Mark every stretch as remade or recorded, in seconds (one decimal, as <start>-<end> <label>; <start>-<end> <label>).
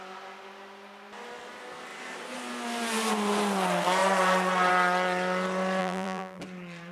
0.0-5.8 recorded; 5.8-6.4 remade; 6.4-6.9 recorded